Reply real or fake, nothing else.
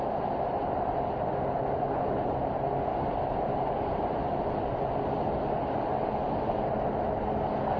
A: real